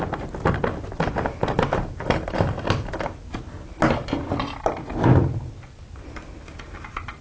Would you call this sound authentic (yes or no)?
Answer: yes